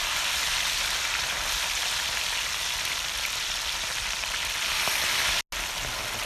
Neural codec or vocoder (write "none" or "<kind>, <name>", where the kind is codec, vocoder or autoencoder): none